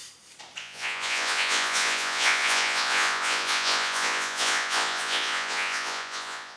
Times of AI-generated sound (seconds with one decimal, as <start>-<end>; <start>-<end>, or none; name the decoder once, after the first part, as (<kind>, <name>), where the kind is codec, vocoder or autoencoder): 0.6-6.6 (vocoder, Vocos)